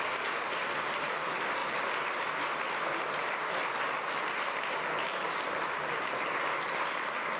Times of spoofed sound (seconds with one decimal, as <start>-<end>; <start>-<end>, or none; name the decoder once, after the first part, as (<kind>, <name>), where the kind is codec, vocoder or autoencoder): none